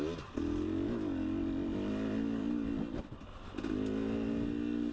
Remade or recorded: recorded